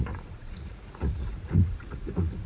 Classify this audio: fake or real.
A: fake